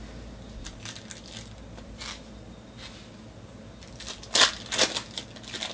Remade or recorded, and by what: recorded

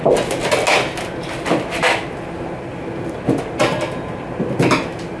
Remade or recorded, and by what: recorded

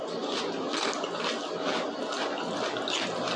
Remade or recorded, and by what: recorded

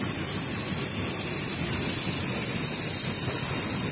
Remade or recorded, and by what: recorded